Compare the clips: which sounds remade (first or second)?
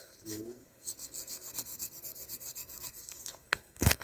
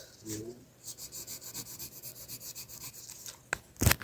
first